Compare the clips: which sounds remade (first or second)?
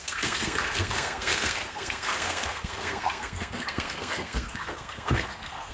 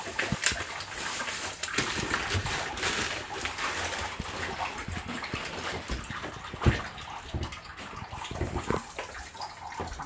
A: first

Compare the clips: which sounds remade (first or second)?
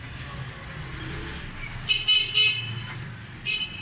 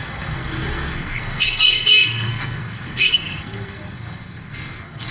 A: second